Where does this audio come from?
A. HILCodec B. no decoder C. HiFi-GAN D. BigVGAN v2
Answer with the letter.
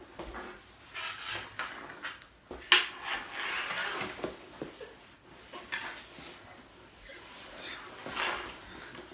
B